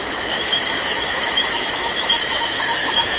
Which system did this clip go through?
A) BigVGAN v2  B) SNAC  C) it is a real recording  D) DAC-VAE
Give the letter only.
D